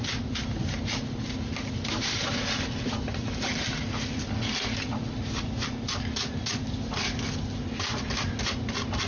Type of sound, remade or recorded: recorded